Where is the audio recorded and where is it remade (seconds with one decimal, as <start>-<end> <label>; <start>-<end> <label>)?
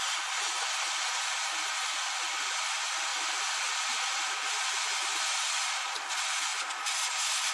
0.0-7.5 recorded